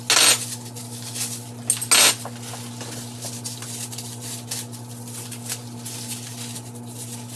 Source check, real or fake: real